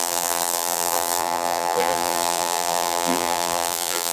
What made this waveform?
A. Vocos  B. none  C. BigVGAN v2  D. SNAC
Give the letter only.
C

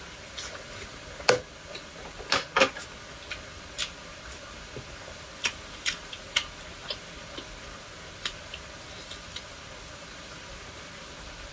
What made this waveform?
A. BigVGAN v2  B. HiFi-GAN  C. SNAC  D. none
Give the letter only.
A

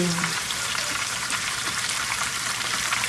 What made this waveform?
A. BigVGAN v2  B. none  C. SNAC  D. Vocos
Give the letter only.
A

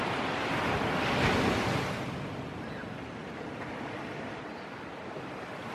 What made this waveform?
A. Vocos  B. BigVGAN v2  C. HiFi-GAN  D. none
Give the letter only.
D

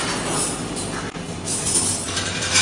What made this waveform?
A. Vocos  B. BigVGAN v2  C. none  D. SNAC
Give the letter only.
C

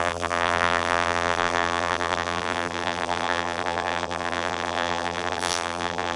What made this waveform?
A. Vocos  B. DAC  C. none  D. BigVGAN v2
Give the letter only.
D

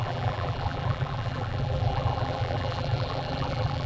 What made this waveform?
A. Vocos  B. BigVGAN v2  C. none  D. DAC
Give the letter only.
B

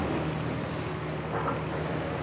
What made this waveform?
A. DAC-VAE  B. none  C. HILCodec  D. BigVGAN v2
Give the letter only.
B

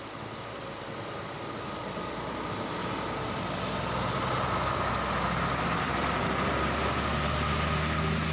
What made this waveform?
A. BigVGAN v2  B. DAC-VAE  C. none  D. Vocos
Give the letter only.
C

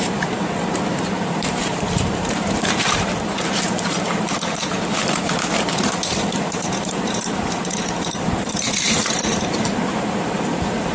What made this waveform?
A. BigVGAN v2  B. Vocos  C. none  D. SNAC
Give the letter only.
A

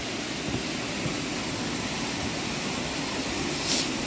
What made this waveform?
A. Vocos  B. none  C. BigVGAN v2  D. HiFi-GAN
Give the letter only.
B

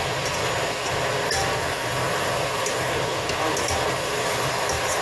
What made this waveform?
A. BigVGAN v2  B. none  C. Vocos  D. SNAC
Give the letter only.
B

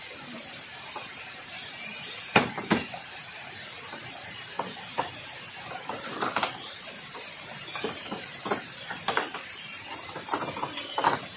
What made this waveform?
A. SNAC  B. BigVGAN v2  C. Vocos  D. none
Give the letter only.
B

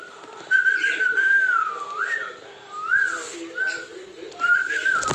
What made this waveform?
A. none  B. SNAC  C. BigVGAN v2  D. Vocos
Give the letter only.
A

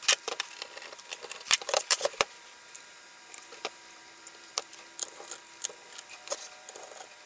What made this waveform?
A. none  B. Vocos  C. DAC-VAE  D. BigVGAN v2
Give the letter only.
D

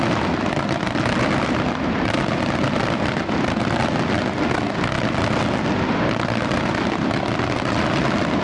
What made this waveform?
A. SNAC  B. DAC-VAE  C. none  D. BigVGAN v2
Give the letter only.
C